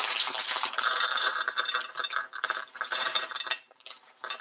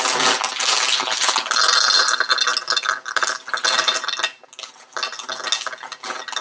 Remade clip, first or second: first